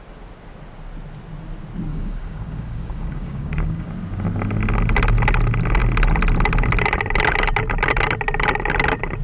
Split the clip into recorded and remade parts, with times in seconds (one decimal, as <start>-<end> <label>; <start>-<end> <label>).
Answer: 0.0-1.9 recorded; 1.9-3.9 remade; 3.9-9.2 recorded